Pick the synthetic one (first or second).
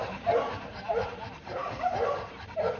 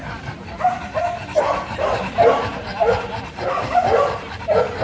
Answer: first